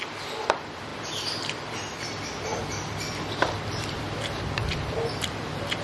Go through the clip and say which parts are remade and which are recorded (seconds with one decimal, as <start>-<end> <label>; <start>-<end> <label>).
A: 0.0-5.8 remade

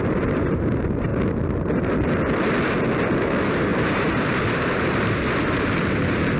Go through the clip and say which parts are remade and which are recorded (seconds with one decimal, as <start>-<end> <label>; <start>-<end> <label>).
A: 0.0-1.1 remade; 1.1-3.2 recorded; 3.2-6.4 remade

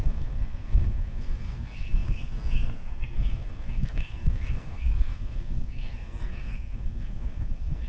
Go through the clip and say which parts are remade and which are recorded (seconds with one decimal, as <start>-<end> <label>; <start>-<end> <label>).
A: 0.0-7.9 remade

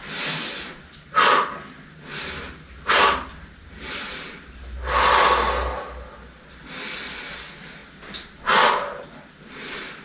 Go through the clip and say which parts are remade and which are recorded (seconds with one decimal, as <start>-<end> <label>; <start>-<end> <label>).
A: 0.0-10.0 recorded

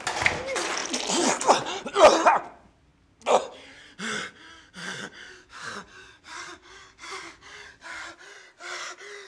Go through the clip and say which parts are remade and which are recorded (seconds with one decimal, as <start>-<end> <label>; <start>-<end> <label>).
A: 0.0-4.5 recorded; 4.5-8.1 remade; 8.1-9.3 recorded

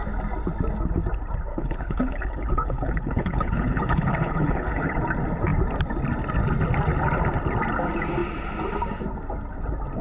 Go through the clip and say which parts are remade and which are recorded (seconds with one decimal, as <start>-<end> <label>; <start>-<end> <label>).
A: 0.0-1.5 recorded; 1.5-5.0 remade; 5.0-10.0 recorded